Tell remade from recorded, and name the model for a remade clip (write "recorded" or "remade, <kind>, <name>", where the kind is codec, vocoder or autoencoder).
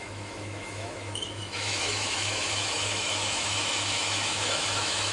remade, autoencoder, DAC-VAE